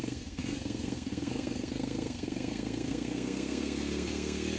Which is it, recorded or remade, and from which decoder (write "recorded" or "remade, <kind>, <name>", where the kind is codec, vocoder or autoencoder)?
remade, codec, SNAC